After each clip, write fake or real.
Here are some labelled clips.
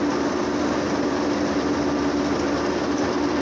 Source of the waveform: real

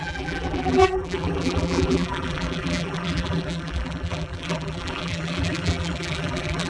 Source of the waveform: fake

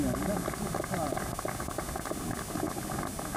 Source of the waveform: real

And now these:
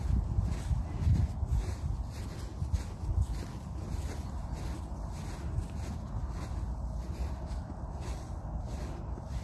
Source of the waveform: real